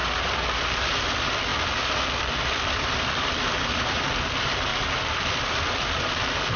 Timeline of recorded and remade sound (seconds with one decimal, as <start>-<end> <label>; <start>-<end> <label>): 0.0-1.5 remade; 1.5-2.4 recorded; 2.4-6.6 remade

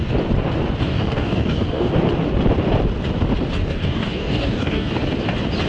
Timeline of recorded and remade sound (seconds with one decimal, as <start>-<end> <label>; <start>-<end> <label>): 0.0-0.9 recorded; 0.9-1.9 remade; 1.9-3.6 recorded; 3.6-4.9 remade; 4.9-5.7 recorded

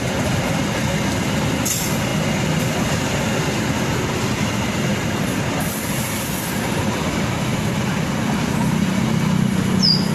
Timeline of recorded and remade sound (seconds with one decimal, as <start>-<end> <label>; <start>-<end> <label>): 0.0-10.1 recorded

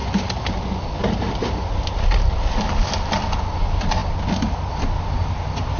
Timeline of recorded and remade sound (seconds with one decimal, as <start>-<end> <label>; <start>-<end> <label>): 0.0-5.8 recorded